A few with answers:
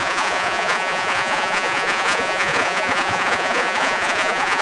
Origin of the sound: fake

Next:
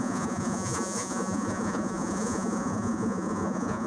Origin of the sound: fake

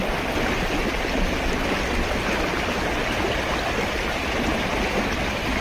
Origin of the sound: real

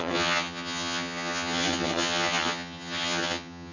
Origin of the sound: fake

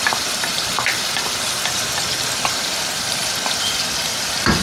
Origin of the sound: real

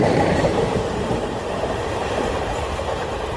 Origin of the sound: fake